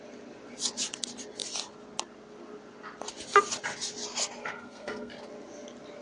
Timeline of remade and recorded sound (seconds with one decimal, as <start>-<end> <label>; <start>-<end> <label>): 0.0-4.4 recorded; 4.4-5.1 remade; 5.1-6.0 recorded